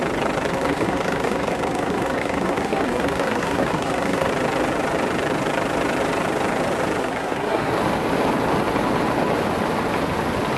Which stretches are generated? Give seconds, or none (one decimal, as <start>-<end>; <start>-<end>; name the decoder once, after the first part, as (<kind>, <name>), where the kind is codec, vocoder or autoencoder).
0.5-4.3 (codec, SNAC); 7.0-7.7